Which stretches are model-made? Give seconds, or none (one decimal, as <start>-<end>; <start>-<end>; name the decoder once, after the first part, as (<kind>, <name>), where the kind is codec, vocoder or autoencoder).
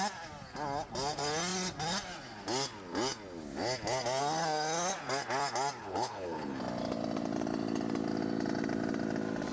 5.8-6.6 (codec, HILCodec)